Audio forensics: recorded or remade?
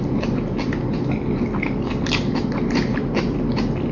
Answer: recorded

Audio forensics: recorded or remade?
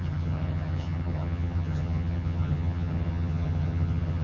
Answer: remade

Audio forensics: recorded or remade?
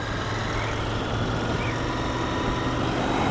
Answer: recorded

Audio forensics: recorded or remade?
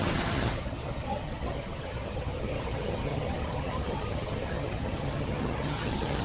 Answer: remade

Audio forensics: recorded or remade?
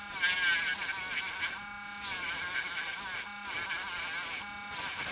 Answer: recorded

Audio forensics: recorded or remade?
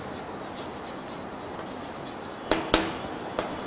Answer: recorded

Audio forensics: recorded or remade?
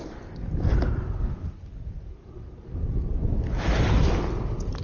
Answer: recorded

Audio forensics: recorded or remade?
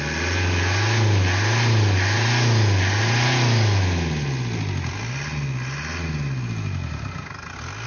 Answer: recorded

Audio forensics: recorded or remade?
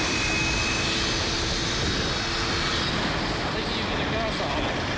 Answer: recorded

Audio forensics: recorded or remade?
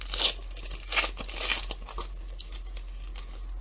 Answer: recorded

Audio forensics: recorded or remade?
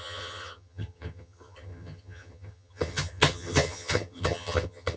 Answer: remade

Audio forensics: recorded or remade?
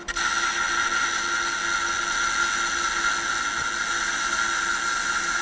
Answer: recorded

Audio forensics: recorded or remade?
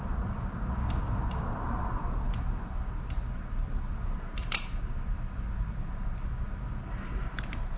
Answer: recorded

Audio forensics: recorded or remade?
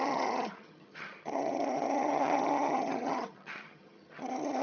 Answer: remade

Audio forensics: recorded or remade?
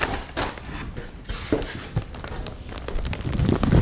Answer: recorded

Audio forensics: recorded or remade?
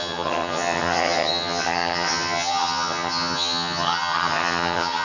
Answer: remade